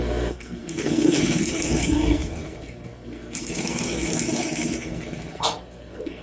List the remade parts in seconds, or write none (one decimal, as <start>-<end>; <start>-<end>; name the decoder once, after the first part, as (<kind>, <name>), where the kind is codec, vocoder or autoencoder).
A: 0.0-6.2 (codec, SNAC)